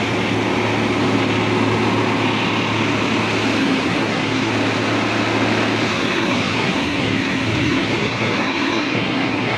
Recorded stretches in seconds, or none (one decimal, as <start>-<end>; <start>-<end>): 0.0-3.6; 4.5-5.9